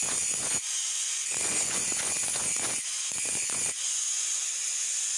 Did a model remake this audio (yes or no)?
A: yes